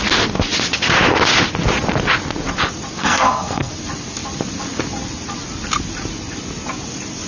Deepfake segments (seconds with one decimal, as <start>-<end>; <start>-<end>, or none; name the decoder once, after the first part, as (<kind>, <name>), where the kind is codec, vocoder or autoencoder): 3.0-3.7 (codec, SNAC)

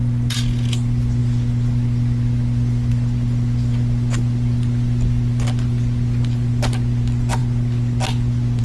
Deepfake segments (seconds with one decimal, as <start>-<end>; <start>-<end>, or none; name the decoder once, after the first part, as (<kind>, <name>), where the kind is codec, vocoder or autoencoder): none

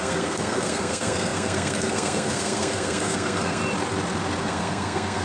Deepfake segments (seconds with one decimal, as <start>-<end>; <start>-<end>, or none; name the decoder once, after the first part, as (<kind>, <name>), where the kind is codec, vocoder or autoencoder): 0.0-3.6 (codec, SNAC); 4.4-5.2

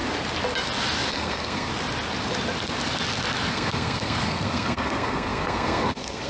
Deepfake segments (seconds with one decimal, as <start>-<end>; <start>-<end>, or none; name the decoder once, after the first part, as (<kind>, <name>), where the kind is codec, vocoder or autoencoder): 1.1-1.7 (codec, SNAC); 3.5-6.3